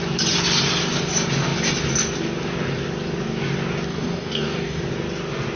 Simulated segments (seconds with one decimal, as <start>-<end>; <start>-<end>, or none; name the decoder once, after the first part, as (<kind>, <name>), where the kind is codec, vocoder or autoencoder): 3.9-4.8 (codec, DAC)